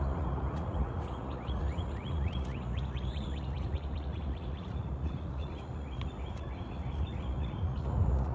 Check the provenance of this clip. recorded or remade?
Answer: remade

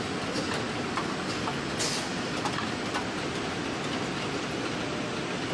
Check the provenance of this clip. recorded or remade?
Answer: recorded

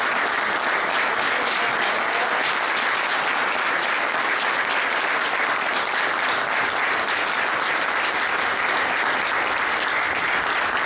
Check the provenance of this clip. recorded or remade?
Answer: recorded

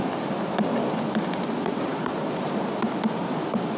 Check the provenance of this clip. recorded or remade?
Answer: recorded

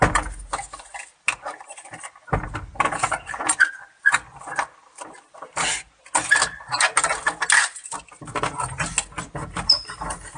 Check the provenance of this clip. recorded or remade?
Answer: recorded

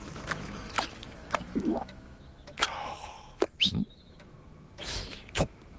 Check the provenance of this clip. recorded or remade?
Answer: remade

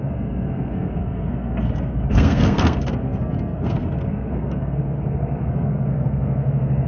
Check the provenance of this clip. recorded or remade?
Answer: remade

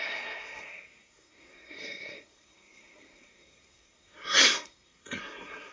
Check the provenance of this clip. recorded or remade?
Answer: remade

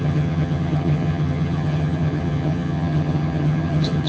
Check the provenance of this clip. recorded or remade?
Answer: remade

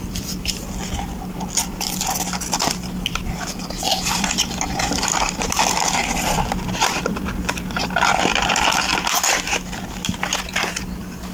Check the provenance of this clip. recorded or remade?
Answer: remade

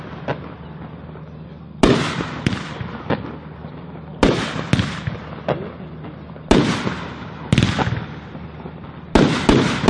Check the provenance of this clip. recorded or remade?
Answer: recorded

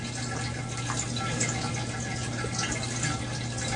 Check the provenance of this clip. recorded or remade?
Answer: recorded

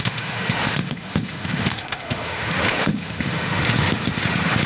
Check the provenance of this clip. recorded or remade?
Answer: remade